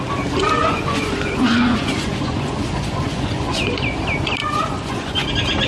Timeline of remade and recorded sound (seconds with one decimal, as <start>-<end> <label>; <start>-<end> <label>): 0.0-0.6 recorded; 0.6-4.0 remade; 4.0-4.4 recorded; 4.4-5.3 remade; 5.3-5.7 recorded